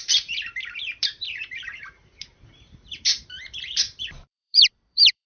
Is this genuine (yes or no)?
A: no